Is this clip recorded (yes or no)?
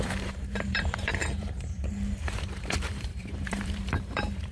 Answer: no